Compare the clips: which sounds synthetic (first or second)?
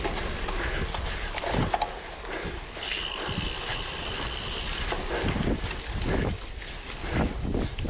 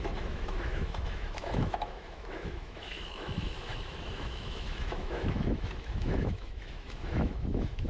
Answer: second